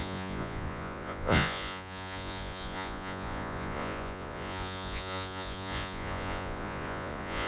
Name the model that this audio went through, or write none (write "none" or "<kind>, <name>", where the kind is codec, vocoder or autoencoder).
vocoder, Vocos